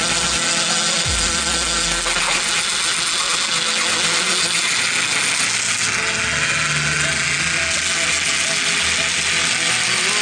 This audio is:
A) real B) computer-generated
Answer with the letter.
A